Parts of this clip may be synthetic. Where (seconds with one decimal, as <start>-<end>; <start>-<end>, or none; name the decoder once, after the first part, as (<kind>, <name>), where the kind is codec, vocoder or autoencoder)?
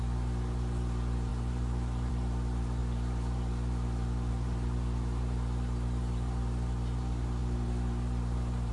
0.0-8.7 (vocoder, BigVGAN v2)